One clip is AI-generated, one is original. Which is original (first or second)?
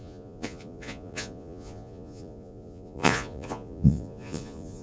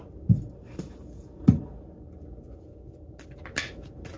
second